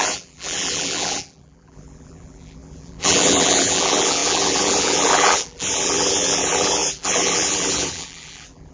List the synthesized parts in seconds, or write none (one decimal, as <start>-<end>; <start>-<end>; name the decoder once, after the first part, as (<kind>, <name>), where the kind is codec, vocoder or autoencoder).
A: 0.0-8.7 (vocoder, BigVGAN v2)